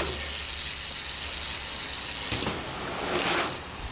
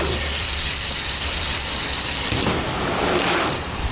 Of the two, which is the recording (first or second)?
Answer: first